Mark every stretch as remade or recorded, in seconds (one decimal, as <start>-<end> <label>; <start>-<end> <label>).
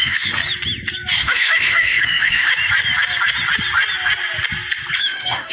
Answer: 0.0-0.4 remade; 0.4-1.2 recorded; 1.2-2.5 remade; 2.5-5.0 recorded; 5.0-5.5 remade